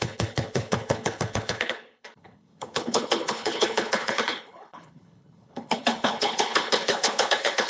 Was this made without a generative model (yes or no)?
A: no